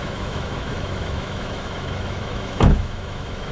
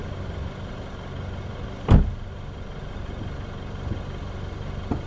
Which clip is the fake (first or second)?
first